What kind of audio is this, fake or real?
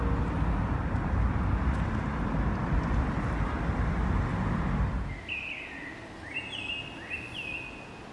real